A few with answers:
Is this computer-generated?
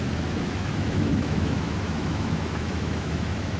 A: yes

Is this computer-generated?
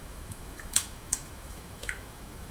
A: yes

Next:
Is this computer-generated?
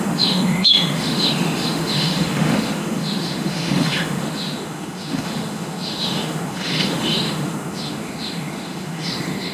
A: yes